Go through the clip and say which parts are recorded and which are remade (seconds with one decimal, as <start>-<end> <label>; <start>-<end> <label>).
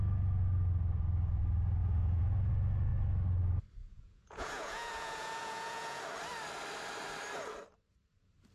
0.0-1.8 recorded; 1.8-2.5 remade; 2.5-3.8 recorded; 3.8-6.0 remade; 6.0-8.5 recorded